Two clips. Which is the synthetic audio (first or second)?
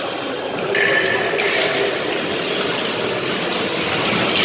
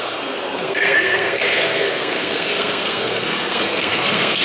second